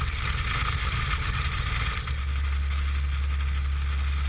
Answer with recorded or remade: recorded